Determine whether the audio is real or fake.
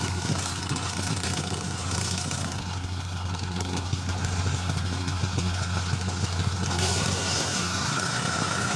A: fake